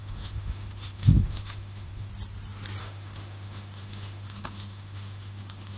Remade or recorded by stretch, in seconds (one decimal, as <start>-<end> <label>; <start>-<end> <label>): 0.0-2.1 remade; 2.1-2.8 recorded; 2.8-5.8 remade